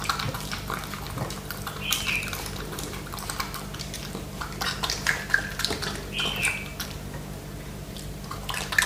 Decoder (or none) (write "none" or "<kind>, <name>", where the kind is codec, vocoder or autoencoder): none